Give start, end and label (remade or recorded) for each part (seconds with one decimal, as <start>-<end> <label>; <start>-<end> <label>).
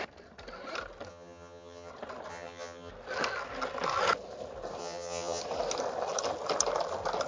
0.0-1.1 recorded; 1.1-1.9 remade; 1.9-2.3 recorded; 2.3-2.9 remade; 2.9-4.8 recorded; 4.8-5.4 remade; 5.4-7.3 recorded